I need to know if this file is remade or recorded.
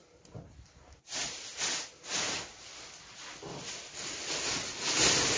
recorded